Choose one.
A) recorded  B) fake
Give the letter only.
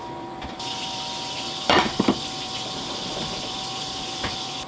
B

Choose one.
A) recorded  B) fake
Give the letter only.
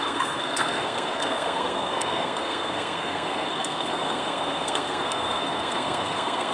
B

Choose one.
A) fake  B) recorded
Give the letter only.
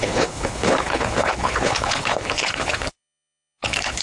A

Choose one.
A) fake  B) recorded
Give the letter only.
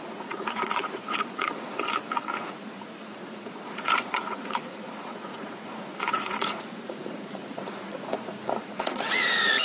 A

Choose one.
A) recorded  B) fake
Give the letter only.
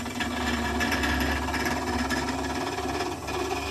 A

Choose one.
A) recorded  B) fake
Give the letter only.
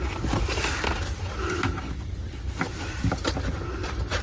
A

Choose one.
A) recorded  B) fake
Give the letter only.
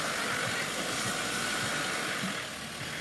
A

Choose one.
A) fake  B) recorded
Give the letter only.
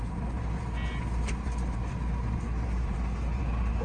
B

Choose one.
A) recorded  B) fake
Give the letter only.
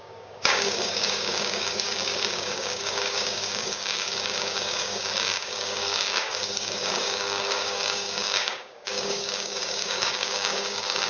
B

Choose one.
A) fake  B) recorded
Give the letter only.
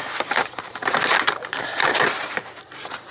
A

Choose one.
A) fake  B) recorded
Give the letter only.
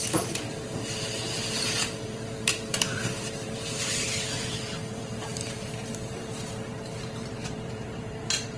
A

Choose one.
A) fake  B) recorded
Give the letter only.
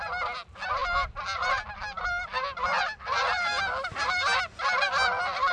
B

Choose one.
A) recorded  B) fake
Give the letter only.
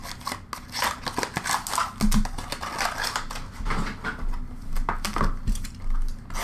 A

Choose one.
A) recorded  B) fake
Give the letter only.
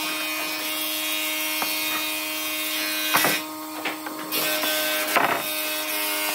A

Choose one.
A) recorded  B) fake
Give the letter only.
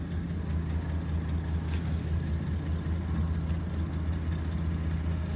A